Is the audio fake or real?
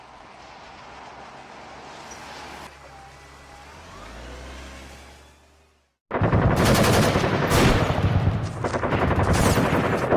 real